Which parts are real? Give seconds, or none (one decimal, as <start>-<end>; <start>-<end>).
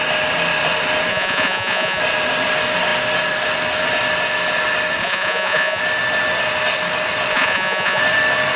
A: 0.0-1.1; 2.0-5.0; 5.8-7.3; 8.0-8.6